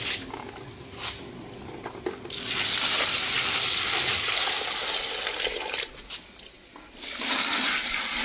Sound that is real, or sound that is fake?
real